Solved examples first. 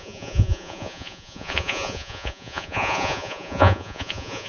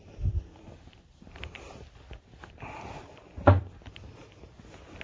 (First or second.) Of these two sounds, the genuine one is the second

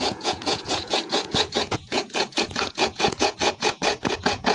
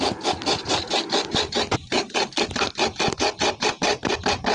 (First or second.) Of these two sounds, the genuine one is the second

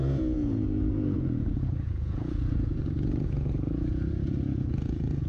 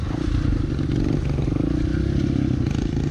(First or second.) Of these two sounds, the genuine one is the second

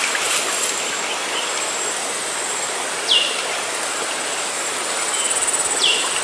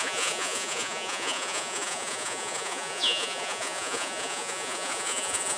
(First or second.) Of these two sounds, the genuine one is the first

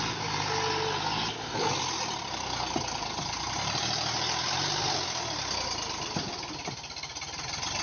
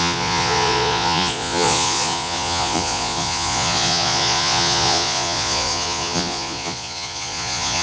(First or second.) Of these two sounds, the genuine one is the first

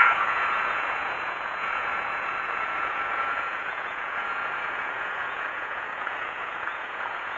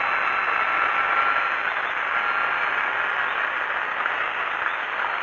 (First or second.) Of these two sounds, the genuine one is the second